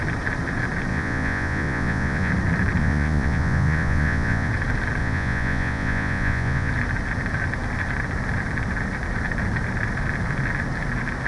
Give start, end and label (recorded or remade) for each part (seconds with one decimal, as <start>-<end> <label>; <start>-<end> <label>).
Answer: 0.0-0.9 recorded; 0.9-2.3 remade; 2.3-2.8 recorded; 2.8-4.5 remade; 4.5-5.0 recorded; 5.0-6.7 remade; 6.7-11.3 recorded